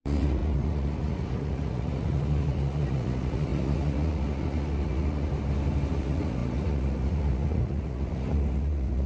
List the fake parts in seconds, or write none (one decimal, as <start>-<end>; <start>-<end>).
0.0-5.3; 5.9-9.1